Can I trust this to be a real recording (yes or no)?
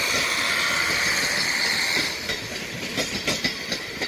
yes